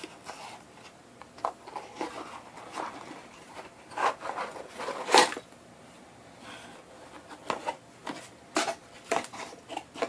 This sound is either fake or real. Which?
real